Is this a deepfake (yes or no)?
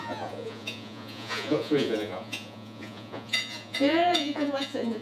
yes